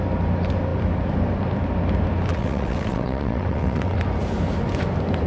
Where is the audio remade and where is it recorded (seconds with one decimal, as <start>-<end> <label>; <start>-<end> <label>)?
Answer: 0.0-2.3 recorded; 2.3-4.0 remade; 4.0-5.3 recorded